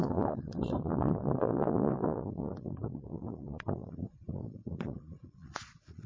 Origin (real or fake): fake